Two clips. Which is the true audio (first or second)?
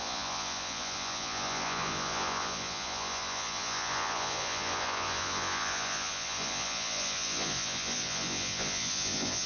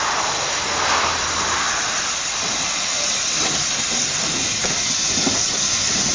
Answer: second